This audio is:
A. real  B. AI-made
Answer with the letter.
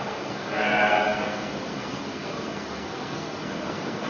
B